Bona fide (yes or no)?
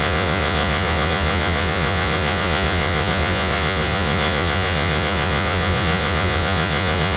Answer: no